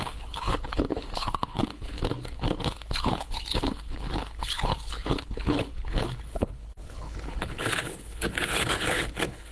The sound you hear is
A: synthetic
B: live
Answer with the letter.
A